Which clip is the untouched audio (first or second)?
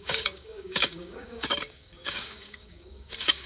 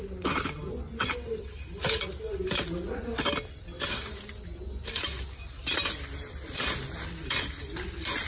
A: second